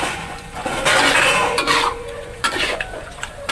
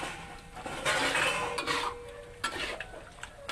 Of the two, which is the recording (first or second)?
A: second